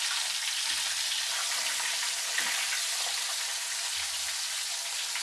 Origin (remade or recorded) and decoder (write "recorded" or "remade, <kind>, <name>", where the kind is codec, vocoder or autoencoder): recorded